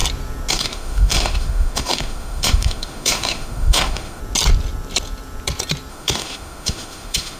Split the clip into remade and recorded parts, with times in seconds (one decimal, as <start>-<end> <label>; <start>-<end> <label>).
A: 0.0-0.5 recorded; 0.5-4.2 remade; 4.2-5.9 recorded; 5.9-7.4 remade